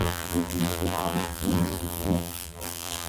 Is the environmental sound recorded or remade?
remade